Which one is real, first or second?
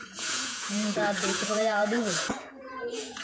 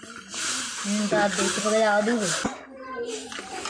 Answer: second